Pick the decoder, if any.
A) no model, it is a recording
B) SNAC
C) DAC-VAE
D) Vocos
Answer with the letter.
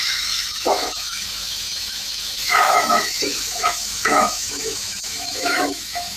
C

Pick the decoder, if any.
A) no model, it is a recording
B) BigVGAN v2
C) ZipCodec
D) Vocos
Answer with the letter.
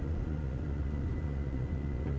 D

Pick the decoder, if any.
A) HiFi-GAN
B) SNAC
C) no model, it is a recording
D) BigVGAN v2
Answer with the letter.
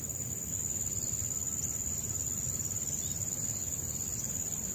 C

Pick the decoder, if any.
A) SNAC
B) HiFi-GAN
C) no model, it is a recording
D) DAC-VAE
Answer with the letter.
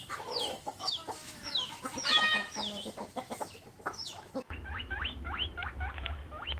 D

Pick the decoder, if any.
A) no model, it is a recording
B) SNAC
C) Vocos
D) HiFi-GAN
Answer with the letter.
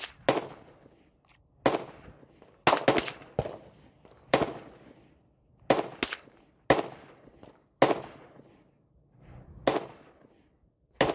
A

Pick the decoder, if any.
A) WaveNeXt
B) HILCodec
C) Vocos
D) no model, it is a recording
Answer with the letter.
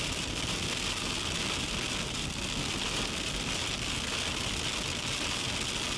D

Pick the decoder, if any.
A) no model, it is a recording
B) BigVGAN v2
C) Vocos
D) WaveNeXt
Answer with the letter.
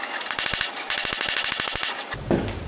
A